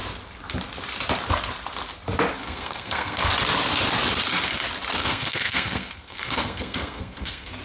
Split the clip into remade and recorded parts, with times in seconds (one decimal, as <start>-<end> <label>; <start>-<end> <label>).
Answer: 0.0-2.4 recorded; 2.4-3.3 remade; 3.3-5.0 recorded; 5.0-7.6 remade